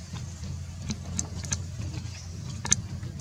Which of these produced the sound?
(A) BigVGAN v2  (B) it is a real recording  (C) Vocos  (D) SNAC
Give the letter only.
B